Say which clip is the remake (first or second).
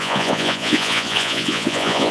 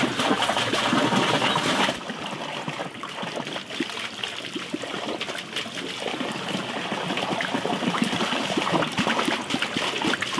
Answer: first